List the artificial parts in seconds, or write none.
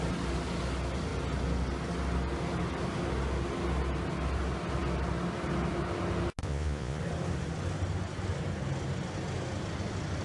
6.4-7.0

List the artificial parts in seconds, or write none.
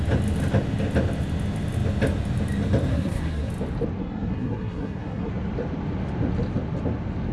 2.9-3.5; 4.0-5.3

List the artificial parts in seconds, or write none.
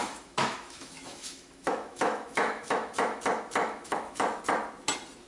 0.0-3.2; 3.6-4.4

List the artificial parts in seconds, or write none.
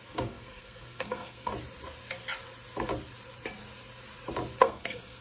0.0-1.5; 4.6-5.2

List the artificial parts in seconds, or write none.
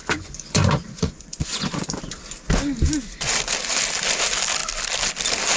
0.0-1.9